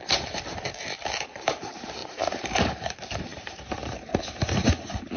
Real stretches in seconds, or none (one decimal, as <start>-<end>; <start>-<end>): none